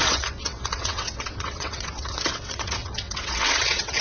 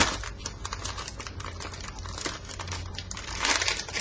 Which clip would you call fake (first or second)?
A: first